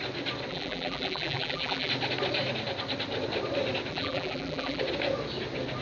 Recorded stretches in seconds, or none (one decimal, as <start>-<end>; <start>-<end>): 0.0-0.5; 1.9-3.9; 4.8-5.8